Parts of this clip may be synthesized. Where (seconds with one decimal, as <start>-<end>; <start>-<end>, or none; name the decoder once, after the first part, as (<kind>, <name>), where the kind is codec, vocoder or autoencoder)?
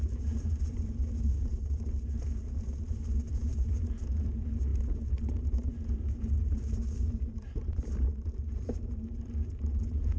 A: 0.0-10.2 (vocoder, BigVGAN v2)